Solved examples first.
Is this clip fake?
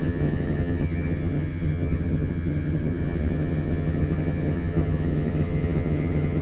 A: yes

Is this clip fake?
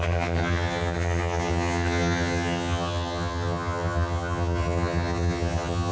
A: yes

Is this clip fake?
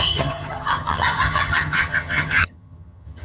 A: yes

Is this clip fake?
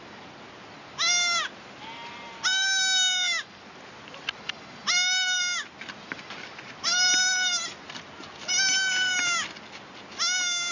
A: no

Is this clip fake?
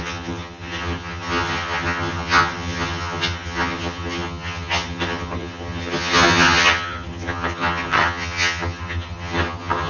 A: yes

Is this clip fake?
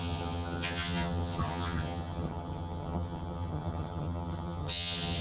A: yes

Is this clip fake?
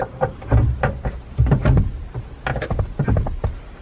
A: no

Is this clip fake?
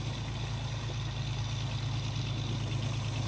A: no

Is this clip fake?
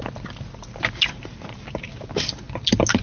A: no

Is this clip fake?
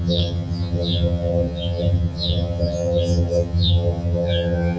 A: yes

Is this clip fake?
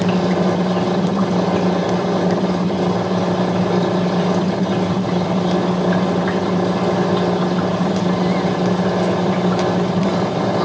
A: no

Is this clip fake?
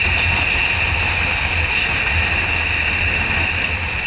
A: no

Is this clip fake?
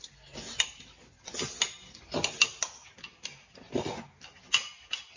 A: no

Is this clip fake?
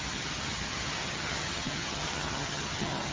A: yes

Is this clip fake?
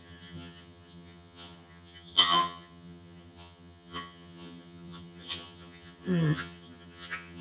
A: yes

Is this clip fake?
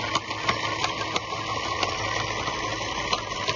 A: no